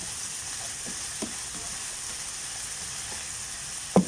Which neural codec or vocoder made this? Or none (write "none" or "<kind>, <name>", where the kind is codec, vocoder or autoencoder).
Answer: none